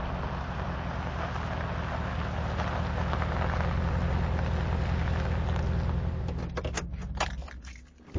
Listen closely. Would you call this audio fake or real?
real